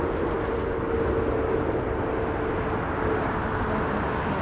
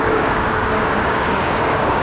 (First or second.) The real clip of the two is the first